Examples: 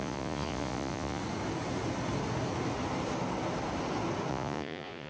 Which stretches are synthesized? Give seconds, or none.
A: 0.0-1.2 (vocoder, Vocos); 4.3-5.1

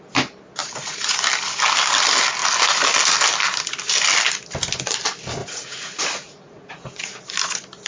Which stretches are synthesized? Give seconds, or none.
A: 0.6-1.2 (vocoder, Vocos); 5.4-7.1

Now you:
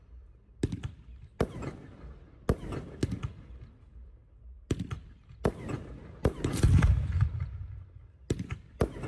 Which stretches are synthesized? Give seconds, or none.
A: none